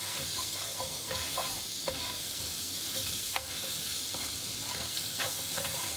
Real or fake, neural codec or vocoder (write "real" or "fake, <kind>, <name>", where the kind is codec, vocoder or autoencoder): fake, codec, SNAC